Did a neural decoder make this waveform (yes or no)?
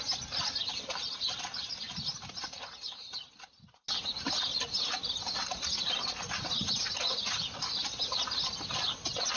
no